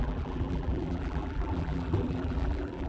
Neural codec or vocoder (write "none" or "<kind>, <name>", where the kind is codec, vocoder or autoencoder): vocoder, BigVGAN v2